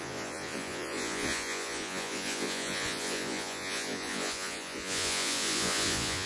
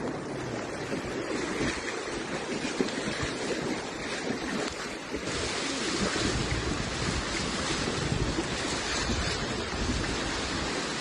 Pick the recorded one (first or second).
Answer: second